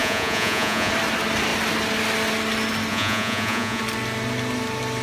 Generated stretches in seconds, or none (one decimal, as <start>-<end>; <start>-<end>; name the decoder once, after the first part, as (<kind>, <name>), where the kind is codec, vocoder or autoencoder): 0.0-0.9 (vocoder, Vocos); 2.9-3.8